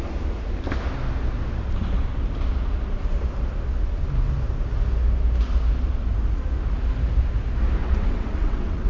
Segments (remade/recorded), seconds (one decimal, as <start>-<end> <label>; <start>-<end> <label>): 0.0-7.8 recorded; 7.8-8.9 remade